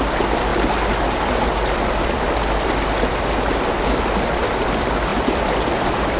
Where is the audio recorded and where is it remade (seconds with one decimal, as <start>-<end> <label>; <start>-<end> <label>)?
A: 0.0-6.2 recorded